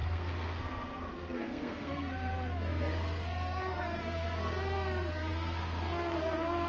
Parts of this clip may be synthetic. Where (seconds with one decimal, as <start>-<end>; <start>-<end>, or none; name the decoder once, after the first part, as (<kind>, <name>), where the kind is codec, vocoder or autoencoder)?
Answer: 0.0-6.7 (codec, SNAC)